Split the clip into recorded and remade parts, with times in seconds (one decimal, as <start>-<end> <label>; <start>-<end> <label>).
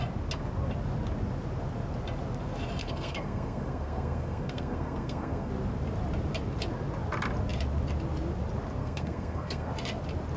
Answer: 0.0-2.8 recorded; 2.8-5.5 remade; 5.5-8.8 recorded; 8.8-9.7 remade; 9.7-10.4 recorded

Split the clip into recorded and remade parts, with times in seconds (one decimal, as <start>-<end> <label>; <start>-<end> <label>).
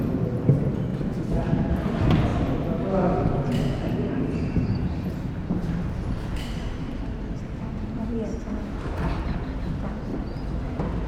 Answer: 0.0-0.9 recorded; 0.9-1.5 remade; 1.5-3.8 recorded; 3.8-8.4 remade; 8.4-11.1 recorded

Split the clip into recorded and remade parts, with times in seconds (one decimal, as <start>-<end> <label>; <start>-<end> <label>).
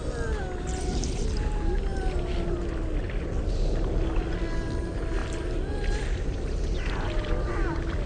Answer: 0.0-8.1 recorded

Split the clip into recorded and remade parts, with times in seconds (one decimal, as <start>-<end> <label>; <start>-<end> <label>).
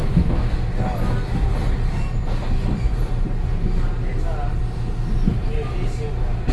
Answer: 0.0-0.5 remade; 0.5-6.5 recorded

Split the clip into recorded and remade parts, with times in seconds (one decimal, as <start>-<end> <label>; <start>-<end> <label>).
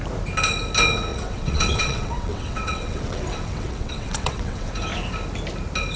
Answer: 0.0-1.1 recorded; 1.1-4.7 remade; 4.7-6.0 recorded